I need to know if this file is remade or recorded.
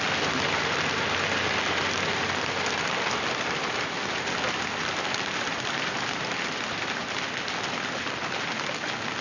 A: recorded